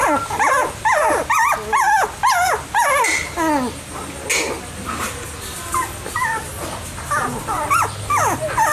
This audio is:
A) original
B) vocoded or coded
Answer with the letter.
A